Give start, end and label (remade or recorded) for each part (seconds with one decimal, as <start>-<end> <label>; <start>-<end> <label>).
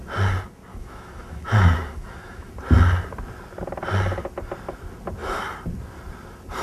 0.0-0.7 recorded; 0.7-2.5 remade; 2.5-6.6 recorded